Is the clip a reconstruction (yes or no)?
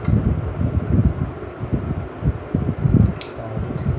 no